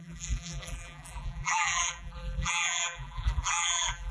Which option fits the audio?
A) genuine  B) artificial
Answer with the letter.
B